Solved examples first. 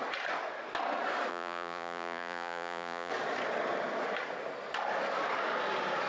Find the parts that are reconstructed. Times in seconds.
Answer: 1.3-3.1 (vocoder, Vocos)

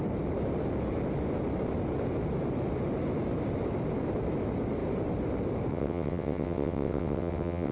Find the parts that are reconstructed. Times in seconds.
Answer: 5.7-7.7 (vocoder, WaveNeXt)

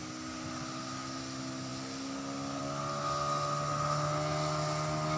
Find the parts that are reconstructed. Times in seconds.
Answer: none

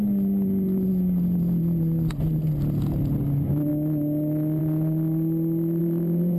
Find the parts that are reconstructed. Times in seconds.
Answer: 5.8-6.4 (vocoder, Vocos)

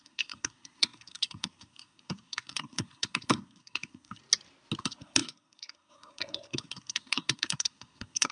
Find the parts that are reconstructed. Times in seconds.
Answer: 0.0-4.2 (codec, SNAC); 4.8-8.3

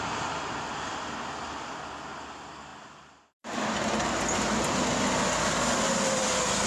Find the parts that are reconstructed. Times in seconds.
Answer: none

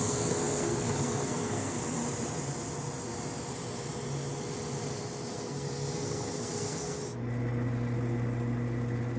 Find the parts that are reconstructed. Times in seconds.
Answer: 0.0-2.0 (codec, SNAC); 5.3-7.0